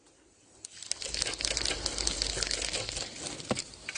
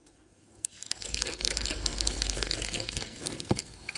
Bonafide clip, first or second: first